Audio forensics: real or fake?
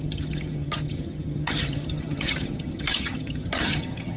fake